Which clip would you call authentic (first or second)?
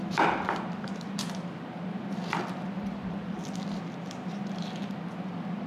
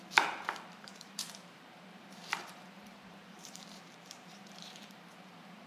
first